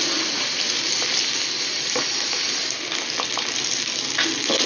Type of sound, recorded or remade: recorded